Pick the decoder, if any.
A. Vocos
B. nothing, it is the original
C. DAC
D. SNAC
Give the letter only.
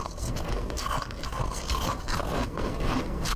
D